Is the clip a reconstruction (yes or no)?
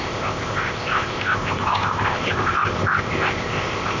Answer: yes